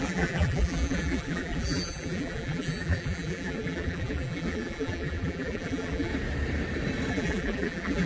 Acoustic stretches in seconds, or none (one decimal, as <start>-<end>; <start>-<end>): 6.1-7.1